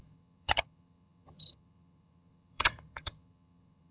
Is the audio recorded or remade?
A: remade